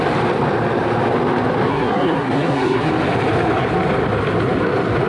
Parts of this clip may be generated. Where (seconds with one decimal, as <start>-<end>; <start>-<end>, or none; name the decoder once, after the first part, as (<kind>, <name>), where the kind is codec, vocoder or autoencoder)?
1.7-2.9 (codec, SNAC)